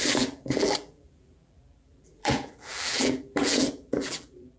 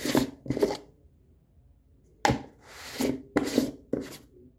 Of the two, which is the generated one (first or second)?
first